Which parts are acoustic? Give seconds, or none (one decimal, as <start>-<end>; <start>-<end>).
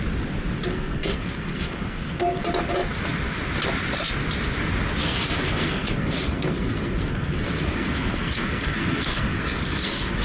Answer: 0.0-0.7; 2.4-5.0